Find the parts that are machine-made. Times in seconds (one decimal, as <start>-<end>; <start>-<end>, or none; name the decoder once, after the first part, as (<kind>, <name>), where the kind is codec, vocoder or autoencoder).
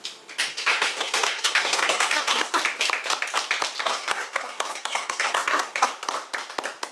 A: 0.5-2.6 (codec, SNAC); 3.8-5.9